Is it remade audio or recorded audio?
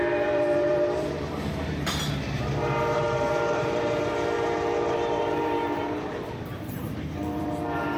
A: remade